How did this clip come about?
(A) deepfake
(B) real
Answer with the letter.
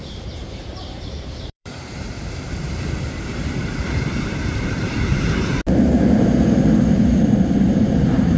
A